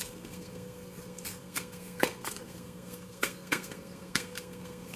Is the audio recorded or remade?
remade